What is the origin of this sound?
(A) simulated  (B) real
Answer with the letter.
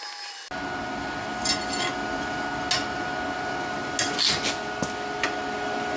B